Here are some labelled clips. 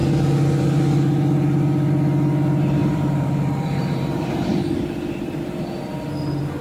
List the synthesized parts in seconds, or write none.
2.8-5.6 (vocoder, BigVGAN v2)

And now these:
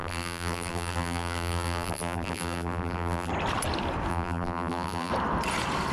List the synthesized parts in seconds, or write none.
0.0-3.3 (vocoder, BigVGAN v2); 4.1-5.1

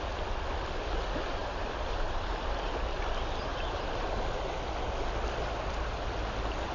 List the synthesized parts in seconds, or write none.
1.4-2.2 (vocoder, BigVGAN v2); 3.5-4.1

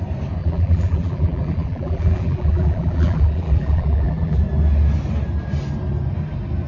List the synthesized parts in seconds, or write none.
0.4-4.4 (vocoder, BigVGAN v2)

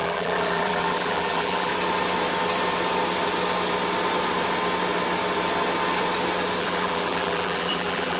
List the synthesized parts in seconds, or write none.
0.0-1.7 (vocoder, BigVGAN v2); 6.6-8.2

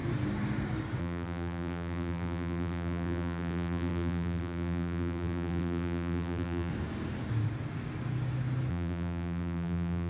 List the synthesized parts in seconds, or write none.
1.0-6.7 (vocoder, BigVGAN v2); 8.7-10.1

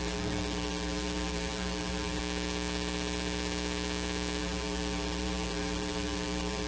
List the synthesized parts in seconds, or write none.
0.0-2.2 (vocoder, BigVGAN v2); 4.4-6.7